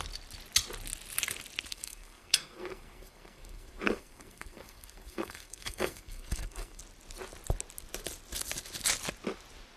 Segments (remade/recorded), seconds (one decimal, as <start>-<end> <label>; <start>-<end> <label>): 0.0-1.7 recorded; 1.7-6.8 remade; 6.8-9.8 recorded